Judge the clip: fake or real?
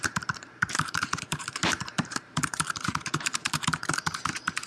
fake